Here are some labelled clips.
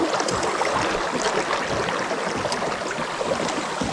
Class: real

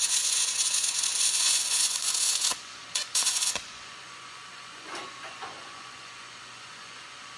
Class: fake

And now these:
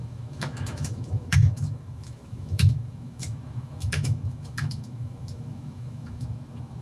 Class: fake